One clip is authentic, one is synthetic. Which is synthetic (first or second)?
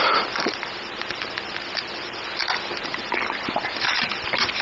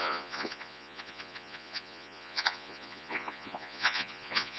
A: second